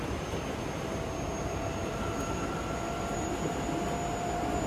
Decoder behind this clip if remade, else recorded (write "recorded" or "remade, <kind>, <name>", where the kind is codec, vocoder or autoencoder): recorded